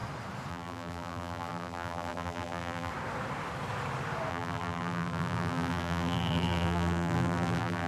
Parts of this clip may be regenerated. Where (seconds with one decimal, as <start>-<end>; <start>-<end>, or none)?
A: 0.5-2.9; 4.3-7.9